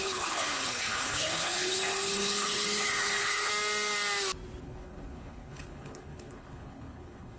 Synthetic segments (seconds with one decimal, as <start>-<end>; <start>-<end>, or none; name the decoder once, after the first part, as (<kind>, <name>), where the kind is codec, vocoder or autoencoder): 0.0-3.5 (codec, HILCodec); 4.6-7.4